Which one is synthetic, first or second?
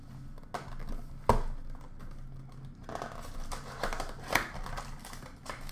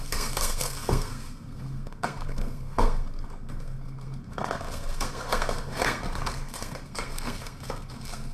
second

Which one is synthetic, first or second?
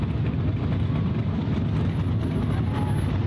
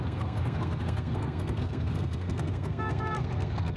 second